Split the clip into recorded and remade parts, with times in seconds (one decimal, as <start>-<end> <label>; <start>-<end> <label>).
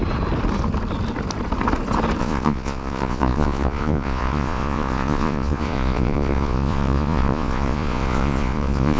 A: 0.0-2.2 recorded; 2.2-9.0 remade